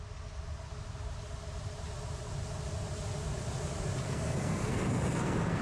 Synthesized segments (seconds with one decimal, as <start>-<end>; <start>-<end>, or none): 4.0-5.6